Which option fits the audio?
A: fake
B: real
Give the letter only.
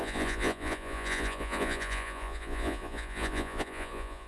A